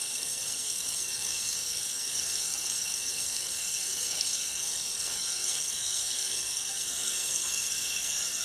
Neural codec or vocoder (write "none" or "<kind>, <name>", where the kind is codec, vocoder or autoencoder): codec, SNAC